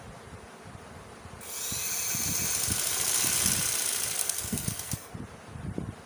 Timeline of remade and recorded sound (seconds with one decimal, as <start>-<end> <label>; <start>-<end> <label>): 0.0-4.2 recorded; 4.2-5.1 remade; 5.1-6.1 recorded